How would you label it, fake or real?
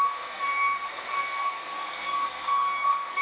fake